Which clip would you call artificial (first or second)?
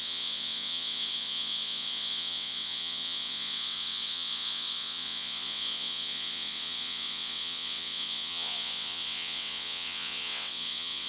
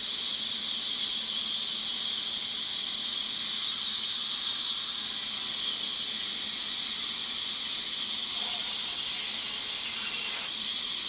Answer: first